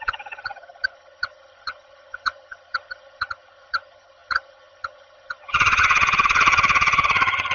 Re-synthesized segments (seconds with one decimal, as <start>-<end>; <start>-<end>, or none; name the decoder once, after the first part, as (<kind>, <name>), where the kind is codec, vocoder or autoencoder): 0.0-7.5 (vocoder, HiFi-GAN)